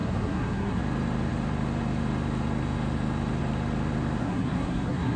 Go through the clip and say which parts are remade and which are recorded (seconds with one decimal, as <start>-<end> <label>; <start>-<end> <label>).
0.0-0.8 remade; 0.8-4.2 recorded; 4.2-5.2 remade